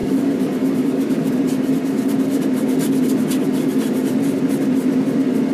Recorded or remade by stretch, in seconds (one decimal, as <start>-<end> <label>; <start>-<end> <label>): 0.0-1.3 remade; 1.3-5.5 recorded